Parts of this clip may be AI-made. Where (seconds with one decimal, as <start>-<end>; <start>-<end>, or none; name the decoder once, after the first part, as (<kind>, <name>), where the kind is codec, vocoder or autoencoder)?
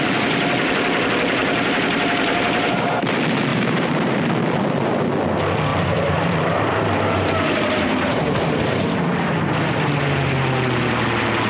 1.4-3.0 (vocoder, BigVGAN v2); 3.5-4.3; 5.7-9.9